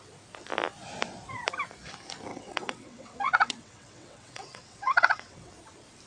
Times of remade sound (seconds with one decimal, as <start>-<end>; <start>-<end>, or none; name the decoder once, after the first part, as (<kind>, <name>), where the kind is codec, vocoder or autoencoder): 2.3-5.5 (vocoder, WaveNeXt)